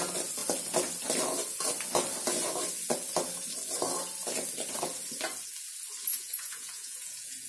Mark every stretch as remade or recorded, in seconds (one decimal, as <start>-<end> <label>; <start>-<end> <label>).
0.0-6.1 recorded; 6.1-7.5 remade